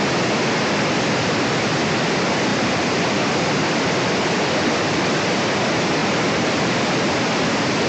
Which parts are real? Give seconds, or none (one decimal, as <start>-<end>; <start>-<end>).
0.0-2.5; 5.4-6.0; 7.5-7.9